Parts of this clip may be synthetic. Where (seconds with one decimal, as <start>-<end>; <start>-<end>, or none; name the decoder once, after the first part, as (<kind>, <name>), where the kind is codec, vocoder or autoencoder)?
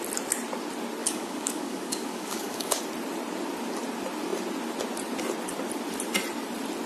1.0-2.8 (codec, DAC)